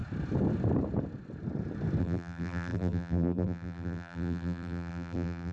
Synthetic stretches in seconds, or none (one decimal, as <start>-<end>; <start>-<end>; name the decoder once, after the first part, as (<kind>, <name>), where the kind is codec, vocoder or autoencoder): 2.0-5.5 (vocoder, BigVGAN v2)